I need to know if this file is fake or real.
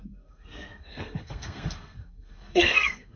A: fake